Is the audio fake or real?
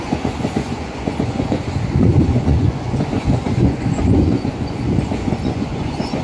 fake